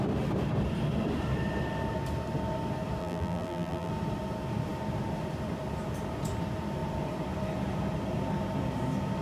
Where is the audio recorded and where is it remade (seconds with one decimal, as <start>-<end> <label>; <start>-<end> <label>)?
0.0-3.0 recorded; 3.0-3.9 remade; 3.9-9.2 recorded